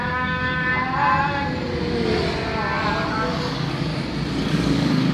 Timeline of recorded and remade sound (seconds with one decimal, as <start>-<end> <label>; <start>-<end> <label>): 0.0-0.7 remade; 0.7-3.1 recorded; 3.1-3.9 remade; 3.9-4.5 recorded; 4.5-5.1 remade